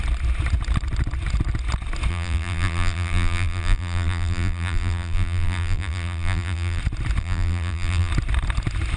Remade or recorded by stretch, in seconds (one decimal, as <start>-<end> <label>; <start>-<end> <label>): 0.0-2.1 recorded; 2.1-6.8 remade; 6.8-7.2 recorded; 7.2-8.1 remade; 8.1-9.0 recorded